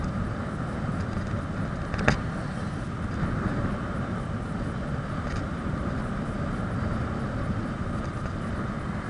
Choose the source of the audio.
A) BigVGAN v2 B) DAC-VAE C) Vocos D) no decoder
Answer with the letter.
D